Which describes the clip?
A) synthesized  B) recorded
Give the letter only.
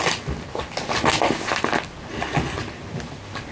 B